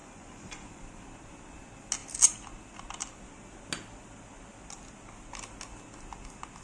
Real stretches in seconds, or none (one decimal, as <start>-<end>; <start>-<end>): 0.8-6.6